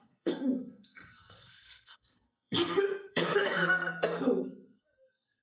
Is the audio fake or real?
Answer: fake